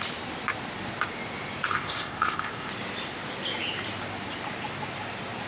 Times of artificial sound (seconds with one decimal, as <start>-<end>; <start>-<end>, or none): 1.7-2.7